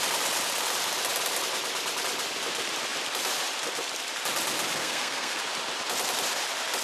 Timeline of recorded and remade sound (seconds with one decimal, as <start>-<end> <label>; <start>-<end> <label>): 0.0-4.8 recorded; 4.8-5.4 remade; 5.4-6.8 recorded